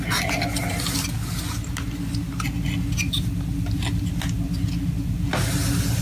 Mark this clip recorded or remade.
recorded